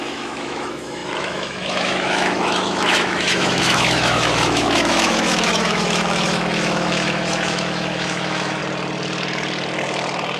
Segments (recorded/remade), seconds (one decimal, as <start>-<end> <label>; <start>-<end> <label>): 0.0-8.6 remade; 8.6-10.4 recorded